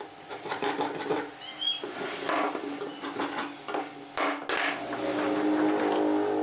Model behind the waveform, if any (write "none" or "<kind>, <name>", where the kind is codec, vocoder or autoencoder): none